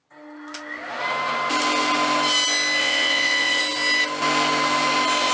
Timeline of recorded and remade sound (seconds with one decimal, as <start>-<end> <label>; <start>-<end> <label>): 0.0-2.8 recorded; 2.8-3.6 remade; 3.6-5.3 recorded